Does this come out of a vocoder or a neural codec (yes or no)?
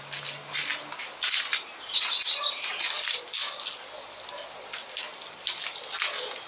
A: no